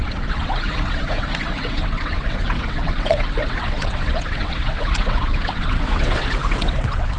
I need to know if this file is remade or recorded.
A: remade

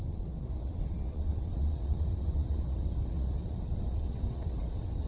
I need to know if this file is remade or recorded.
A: remade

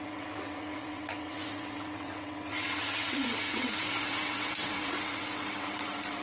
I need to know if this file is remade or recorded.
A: remade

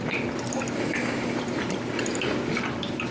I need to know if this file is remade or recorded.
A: recorded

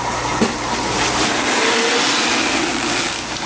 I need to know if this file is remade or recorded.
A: recorded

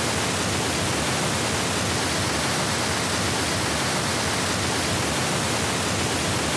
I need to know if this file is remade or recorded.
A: recorded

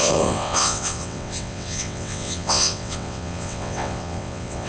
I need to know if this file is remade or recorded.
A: remade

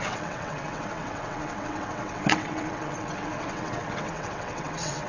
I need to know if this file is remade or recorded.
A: remade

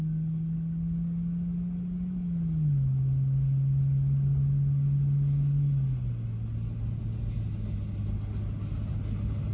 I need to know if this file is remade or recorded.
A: recorded